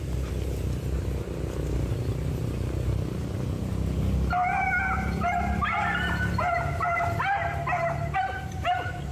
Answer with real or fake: real